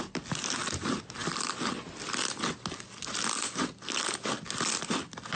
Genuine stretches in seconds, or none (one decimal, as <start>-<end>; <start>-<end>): 0.0-5.4